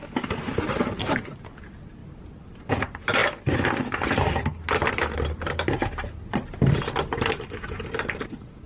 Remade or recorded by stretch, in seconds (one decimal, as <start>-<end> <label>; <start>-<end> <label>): 0.0-0.5 recorded; 0.5-2.0 remade; 2.0-2.8 recorded; 2.8-3.2 remade; 3.2-6.7 recorded; 6.7-8.7 remade